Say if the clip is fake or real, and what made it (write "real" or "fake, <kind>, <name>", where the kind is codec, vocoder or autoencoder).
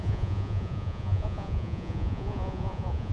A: fake, vocoder, Vocos